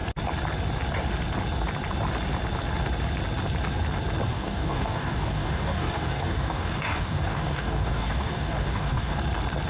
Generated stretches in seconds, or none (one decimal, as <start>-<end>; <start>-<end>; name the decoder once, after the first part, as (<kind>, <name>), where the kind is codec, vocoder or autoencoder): 4.3-9.2 (codec, DAC)